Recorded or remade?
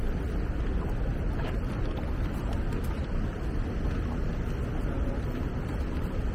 recorded